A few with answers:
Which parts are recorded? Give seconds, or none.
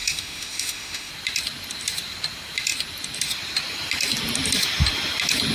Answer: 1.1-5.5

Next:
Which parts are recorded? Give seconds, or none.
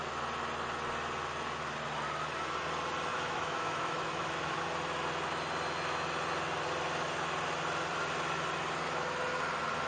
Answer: 0.0-3.1; 4.6-9.9